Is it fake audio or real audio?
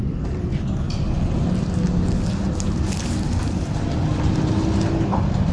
real